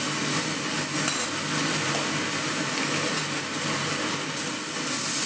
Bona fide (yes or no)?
yes